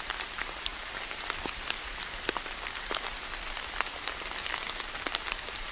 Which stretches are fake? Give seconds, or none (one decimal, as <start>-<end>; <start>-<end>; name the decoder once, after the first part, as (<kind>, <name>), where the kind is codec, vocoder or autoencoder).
0.7-3.0 (vocoder, BigVGAN v2)